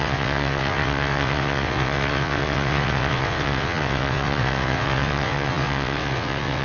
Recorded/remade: remade